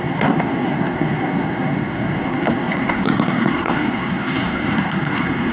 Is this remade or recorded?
remade